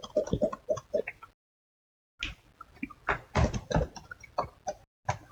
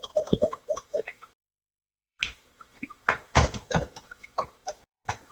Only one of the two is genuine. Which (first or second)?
first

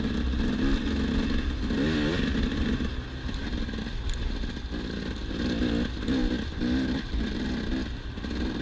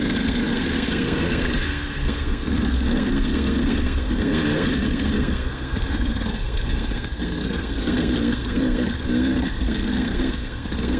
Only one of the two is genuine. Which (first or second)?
first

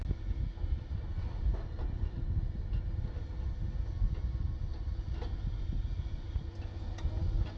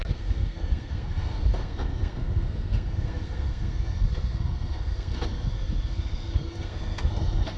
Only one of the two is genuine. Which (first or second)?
first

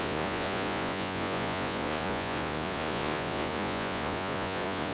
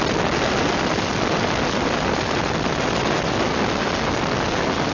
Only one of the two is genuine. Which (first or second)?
second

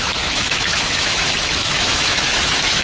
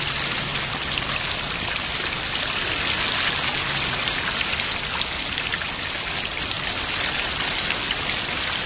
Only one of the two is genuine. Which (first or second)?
second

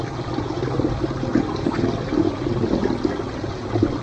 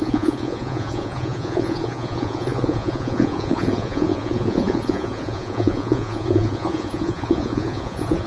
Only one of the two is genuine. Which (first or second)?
first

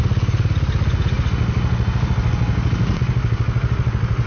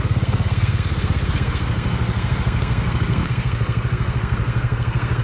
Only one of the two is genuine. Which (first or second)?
first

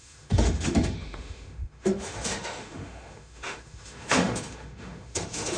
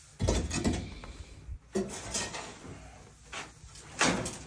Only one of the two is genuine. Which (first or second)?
second